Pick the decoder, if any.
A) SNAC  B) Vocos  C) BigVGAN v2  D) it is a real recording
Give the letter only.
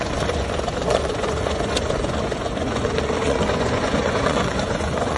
B